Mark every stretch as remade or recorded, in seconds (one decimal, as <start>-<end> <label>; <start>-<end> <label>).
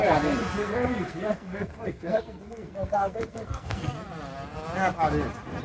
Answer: 0.0-0.6 recorded; 0.6-3.9 remade; 3.9-5.6 recorded